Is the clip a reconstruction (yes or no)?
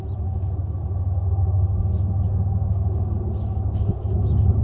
no